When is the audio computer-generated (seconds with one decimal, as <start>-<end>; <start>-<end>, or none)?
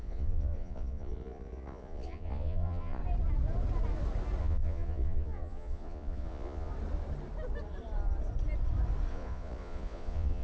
0.0-3.0; 4.4-6.7; 9.1-10.4